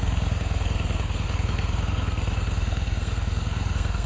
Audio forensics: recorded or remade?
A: remade